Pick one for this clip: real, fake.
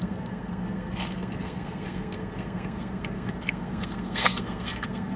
fake